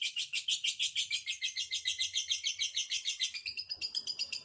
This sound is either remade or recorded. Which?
remade